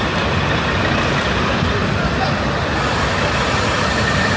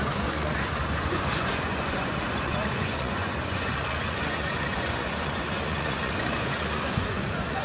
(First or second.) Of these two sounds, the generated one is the second